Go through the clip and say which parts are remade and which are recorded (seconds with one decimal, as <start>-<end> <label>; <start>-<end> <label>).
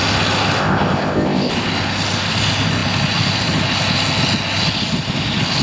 0.0-0.6 recorded; 0.6-1.5 remade; 1.5-5.6 recorded